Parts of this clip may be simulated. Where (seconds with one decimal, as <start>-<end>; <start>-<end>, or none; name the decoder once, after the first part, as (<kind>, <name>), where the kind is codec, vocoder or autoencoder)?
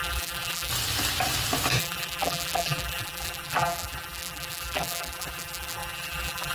0.0-0.7 (vocoder, BigVGAN v2); 1.8-6.5